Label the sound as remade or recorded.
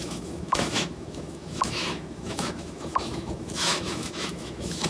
remade